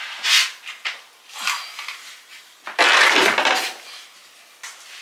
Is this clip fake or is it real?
real